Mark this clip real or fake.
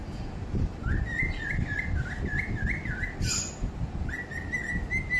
real